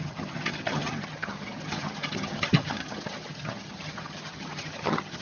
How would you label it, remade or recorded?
remade